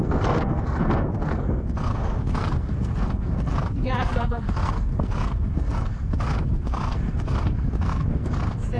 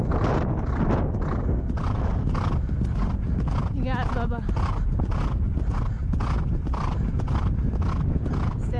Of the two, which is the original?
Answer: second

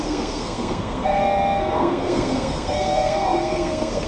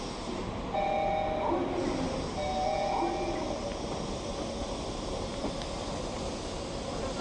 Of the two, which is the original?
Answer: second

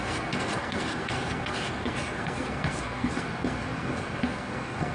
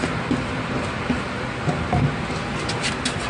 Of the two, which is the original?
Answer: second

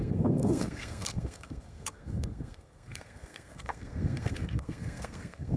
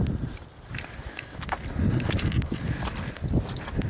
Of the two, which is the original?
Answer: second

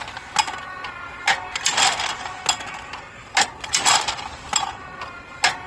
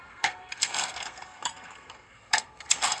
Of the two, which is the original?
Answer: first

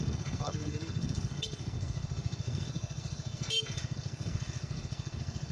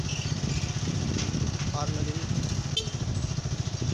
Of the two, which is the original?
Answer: second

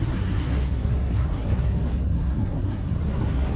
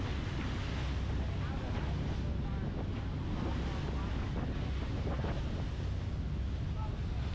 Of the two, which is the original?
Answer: second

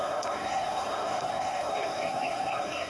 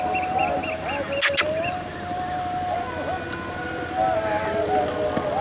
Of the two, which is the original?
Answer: second